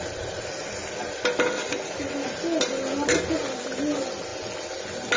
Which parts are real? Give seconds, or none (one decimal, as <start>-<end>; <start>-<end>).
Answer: 0.0-5.2